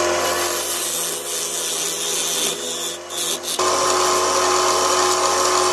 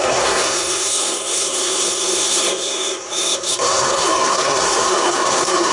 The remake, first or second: second